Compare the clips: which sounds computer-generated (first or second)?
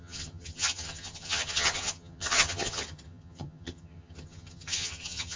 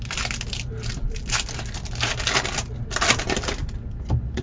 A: first